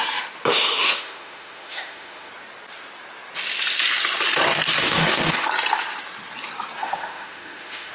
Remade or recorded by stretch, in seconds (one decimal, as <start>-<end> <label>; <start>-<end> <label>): 0.0-0.5 recorded; 0.5-2.3 remade; 2.3-4.8 recorded; 4.8-5.5 remade; 5.5-6.8 recorded; 6.8-7.9 remade